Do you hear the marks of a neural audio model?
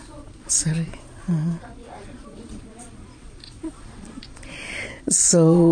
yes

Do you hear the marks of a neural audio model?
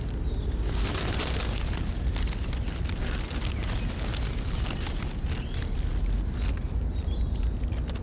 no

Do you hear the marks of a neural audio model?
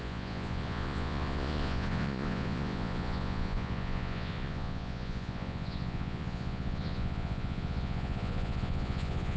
yes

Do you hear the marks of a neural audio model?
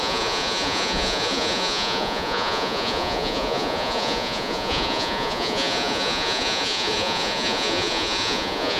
yes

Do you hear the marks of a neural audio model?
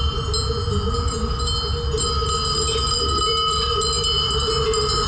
no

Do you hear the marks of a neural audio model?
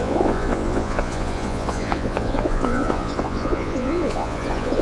yes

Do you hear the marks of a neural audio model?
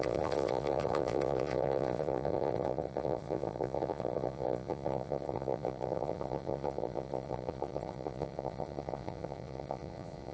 yes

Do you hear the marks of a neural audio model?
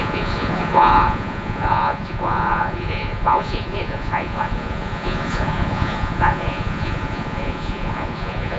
yes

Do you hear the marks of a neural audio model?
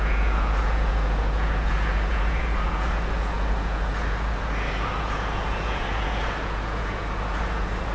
yes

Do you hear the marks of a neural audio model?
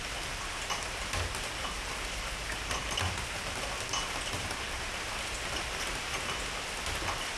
no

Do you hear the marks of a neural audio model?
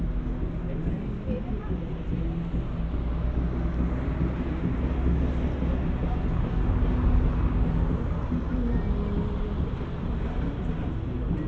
no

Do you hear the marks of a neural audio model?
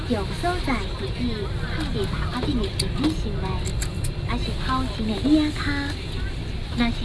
no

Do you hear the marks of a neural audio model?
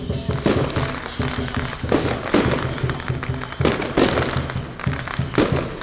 no